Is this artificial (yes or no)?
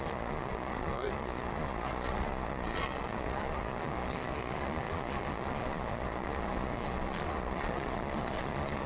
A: yes